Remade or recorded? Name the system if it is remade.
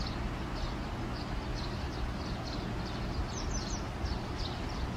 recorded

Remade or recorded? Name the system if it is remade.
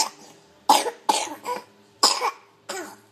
recorded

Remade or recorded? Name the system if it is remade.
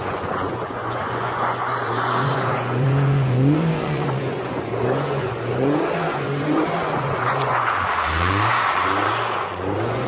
remade, vocoder, Vocos